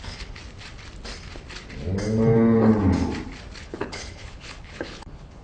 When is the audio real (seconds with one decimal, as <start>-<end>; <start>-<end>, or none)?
0.4-3.6